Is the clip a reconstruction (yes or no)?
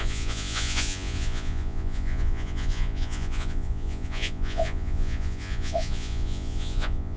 yes